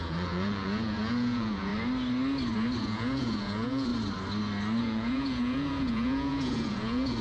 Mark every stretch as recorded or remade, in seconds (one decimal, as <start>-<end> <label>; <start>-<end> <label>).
0.0-1.7 remade; 1.7-2.8 recorded; 2.8-3.9 remade; 3.9-4.8 recorded; 4.8-7.2 remade